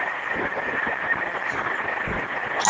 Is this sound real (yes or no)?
yes